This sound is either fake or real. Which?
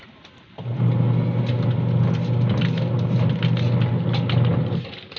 real